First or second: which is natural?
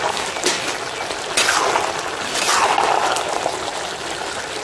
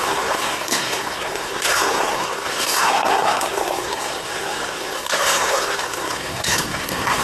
first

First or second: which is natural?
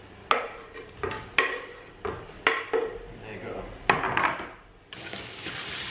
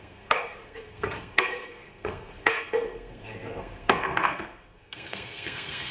first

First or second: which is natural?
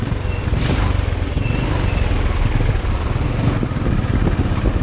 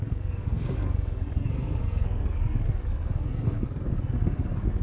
first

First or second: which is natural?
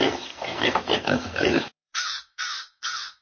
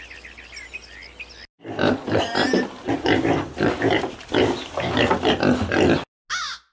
second